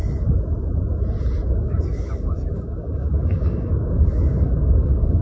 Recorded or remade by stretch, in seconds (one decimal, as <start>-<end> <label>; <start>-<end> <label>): 0.0-1.5 recorded; 1.5-5.2 remade